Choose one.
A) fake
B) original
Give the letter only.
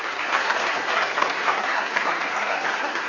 A